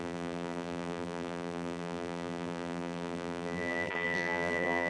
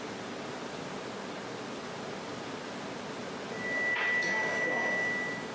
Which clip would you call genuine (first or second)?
second